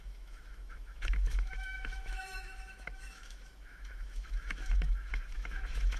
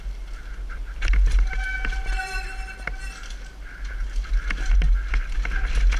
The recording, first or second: second